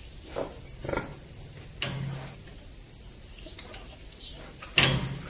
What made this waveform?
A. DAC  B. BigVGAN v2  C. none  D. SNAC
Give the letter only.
C